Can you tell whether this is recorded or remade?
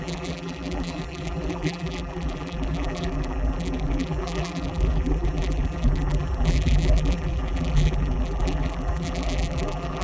remade